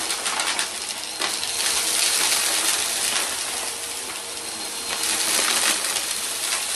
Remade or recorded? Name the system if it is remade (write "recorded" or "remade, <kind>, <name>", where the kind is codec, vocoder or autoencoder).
recorded